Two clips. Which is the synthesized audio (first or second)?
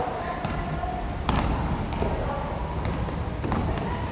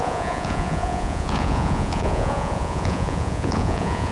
second